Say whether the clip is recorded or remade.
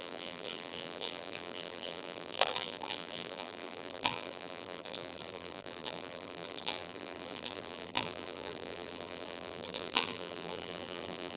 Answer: remade